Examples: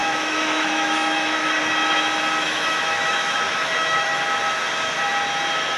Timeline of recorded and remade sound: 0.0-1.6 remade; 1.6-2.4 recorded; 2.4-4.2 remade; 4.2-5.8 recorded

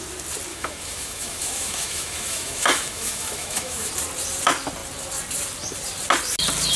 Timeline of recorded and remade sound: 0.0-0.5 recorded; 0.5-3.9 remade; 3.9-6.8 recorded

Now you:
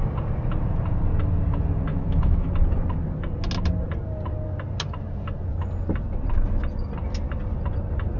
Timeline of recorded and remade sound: 0.0-1.9 recorded; 1.9-2.5 remade; 2.5-8.2 recorded